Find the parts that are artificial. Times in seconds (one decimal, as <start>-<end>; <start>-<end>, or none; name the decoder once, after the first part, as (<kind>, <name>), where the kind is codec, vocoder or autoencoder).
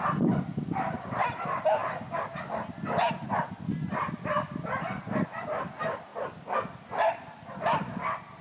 1.8-2.5 (vocoder, BigVGAN v2)